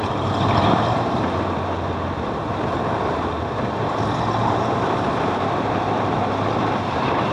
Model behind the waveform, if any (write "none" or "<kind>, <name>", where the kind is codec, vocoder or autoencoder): vocoder, BigVGAN v2